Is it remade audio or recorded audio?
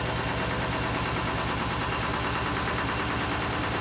recorded